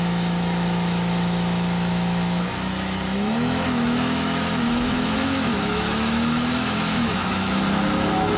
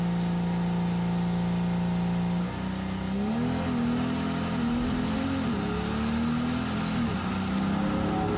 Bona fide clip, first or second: second